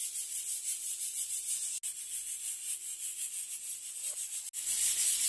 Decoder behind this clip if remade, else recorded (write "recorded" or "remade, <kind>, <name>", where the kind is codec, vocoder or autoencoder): recorded